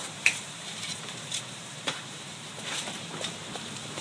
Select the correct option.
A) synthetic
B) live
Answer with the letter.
A